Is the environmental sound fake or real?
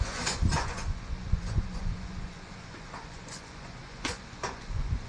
fake